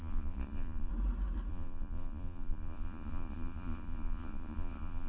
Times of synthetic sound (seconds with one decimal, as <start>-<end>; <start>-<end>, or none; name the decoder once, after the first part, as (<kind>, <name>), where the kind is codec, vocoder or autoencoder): 0.0-0.9 (vocoder, Vocos); 1.5-5.1